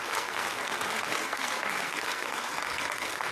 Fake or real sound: fake